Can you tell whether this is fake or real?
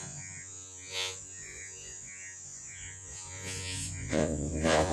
fake